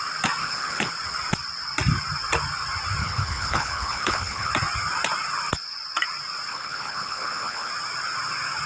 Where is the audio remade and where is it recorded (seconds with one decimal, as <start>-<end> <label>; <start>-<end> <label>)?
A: 0.0-0.4 recorded; 0.4-0.9 remade; 0.9-3.0 recorded; 3.0-4.5 remade; 4.5-6.5 recorded; 6.5-7.7 remade; 7.7-8.7 recorded